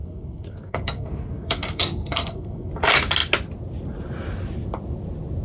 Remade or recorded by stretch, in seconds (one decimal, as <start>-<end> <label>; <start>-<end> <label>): 0.0-2.7 remade; 2.7-5.4 recorded